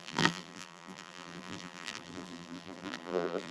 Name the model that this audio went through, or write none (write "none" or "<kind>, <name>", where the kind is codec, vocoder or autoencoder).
vocoder, BigVGAN v2